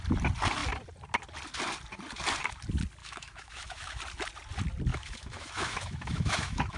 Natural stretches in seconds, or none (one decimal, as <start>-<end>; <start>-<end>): 0.0-3.0; 4.0-4.9